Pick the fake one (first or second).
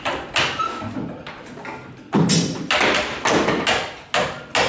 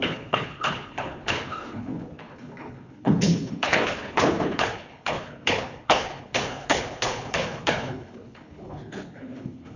second